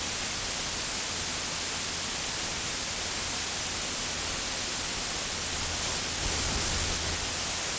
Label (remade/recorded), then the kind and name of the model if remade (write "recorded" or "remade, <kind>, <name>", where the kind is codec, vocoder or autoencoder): recorded